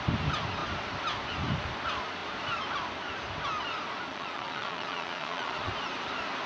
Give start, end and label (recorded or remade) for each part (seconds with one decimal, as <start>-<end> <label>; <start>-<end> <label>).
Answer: 0.0-4.1 recorded; 4.1-5.7 remade; 5.7-6.5 recorded